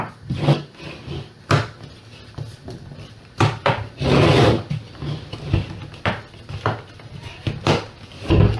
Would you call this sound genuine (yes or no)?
yes